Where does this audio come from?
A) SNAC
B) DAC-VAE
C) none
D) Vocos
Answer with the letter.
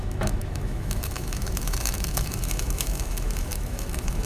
B